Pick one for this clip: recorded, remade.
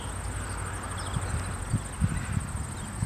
recorded